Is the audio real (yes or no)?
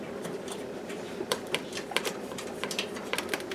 no